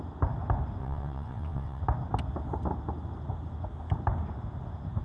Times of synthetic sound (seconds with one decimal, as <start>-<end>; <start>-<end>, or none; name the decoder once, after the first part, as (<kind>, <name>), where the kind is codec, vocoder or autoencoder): 0.8-1.8 (vocoder, WaveNeXt)